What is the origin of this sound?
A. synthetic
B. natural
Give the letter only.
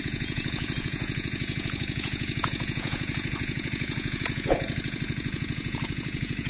A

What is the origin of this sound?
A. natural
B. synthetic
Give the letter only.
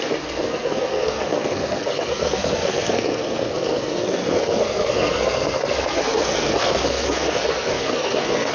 B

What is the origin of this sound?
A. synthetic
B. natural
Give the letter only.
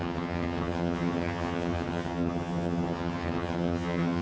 A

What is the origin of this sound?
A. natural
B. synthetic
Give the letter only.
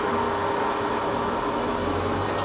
A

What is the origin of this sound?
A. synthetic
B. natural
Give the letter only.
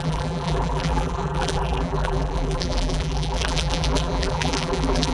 A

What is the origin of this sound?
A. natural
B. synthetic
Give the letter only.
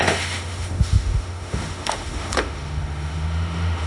B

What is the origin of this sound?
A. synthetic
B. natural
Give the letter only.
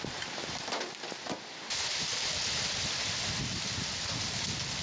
B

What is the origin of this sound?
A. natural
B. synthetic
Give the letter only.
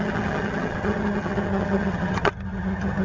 B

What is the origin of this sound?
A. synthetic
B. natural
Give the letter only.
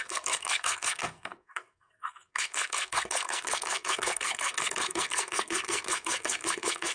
A